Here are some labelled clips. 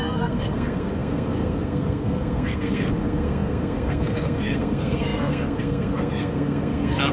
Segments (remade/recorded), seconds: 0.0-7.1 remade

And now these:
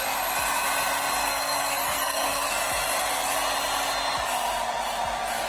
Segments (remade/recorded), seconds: 0.0-1.2 recorded; 1.2-2.5 remade; 2.5-5.5 recorded